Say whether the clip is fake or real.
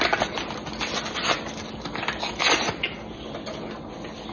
real